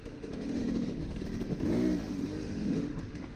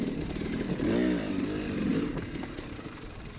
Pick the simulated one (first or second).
first